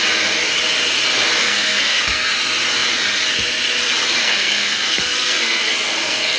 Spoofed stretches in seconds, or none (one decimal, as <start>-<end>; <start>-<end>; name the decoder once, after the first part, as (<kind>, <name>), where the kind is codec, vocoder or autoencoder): 1.4-2.3 (codec, SNAC); 4.2-6.4